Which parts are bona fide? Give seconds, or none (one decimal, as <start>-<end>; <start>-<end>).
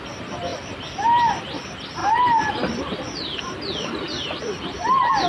0.0-5.3